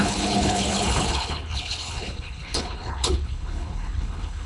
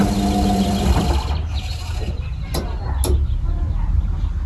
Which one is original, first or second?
second